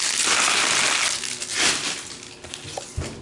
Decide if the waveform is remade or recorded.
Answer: recorded